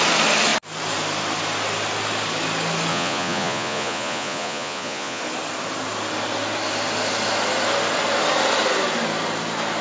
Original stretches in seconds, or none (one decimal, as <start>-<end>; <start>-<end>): 0.0-2.9; 5.2-9.8